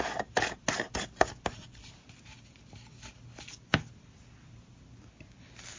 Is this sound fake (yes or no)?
no